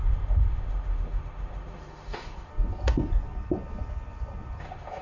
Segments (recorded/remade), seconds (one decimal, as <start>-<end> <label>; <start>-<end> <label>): 0.0-2.5 remade; 2.5-4.6 recorded; 4.6-5.0 remade